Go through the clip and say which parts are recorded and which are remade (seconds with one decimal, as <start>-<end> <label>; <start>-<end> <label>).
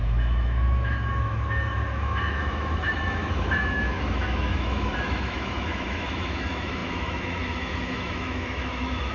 0.0-9.1 remade